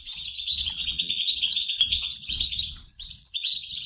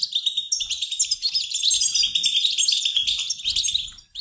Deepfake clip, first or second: first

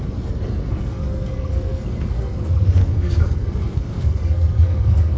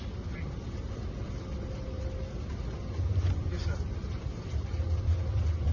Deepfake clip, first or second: first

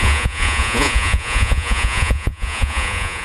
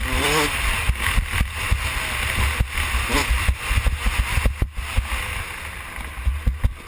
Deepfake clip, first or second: first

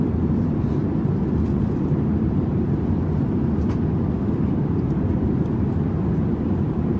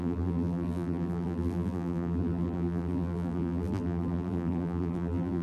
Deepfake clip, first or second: second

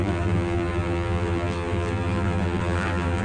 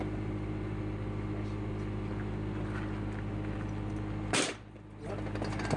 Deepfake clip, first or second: first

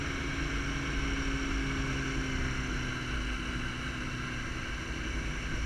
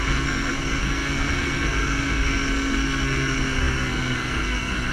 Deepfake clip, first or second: second